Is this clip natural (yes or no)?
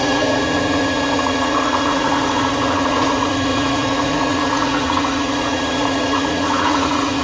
no